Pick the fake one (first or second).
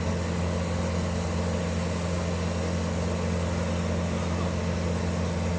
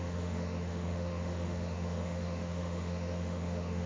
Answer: second